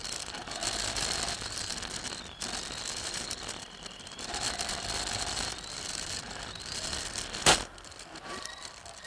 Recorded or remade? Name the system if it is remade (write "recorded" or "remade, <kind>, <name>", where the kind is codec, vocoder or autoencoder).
remade, vocoder, BigVGAN v2